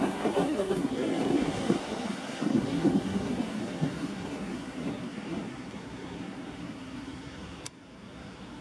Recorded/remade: remade